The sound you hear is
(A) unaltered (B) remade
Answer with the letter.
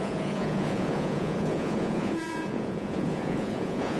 B